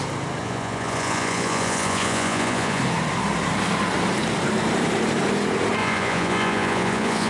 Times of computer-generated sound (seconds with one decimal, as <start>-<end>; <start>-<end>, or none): 0.4-2.8; 5.8-7.3